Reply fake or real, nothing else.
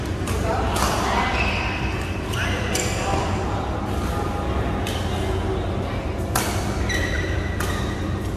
real